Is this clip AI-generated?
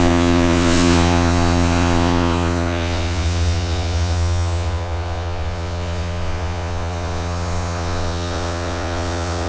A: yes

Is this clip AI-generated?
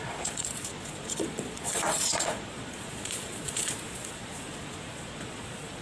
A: yes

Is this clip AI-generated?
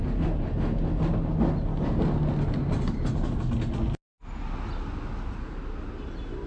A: no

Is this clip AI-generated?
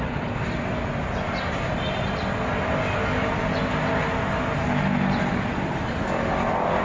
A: no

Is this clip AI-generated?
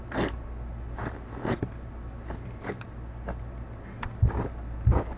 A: no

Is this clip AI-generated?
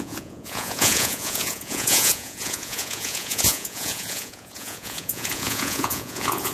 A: yes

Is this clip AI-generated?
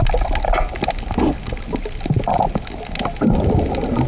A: no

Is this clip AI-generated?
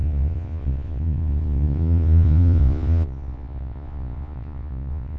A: yes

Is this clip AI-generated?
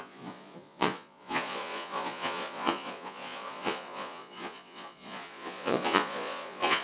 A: yes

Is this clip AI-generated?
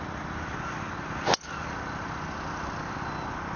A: no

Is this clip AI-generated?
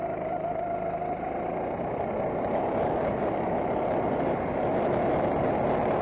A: no